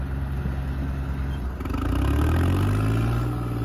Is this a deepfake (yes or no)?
no